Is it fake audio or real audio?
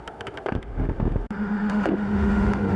fake